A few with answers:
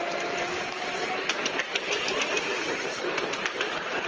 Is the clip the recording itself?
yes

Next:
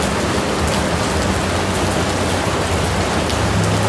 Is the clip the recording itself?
yes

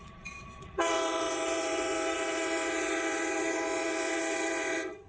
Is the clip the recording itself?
no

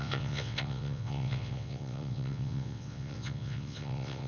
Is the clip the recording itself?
no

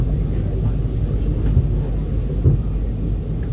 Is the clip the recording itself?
yes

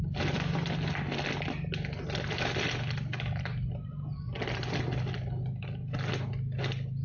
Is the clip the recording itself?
yes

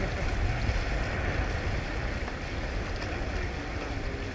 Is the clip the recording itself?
yes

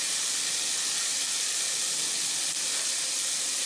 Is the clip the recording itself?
yes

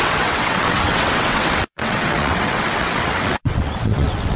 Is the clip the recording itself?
no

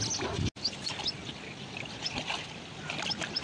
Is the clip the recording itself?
yes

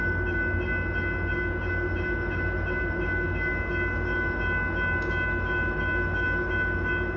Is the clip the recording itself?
yes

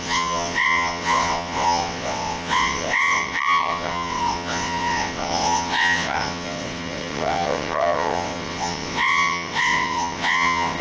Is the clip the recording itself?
no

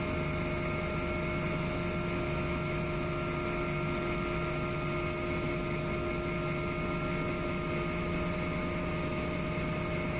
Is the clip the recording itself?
yes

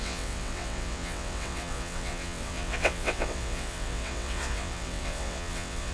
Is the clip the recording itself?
no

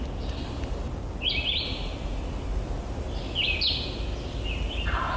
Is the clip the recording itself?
yes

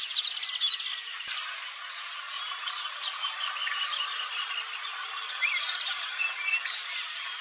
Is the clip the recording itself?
yes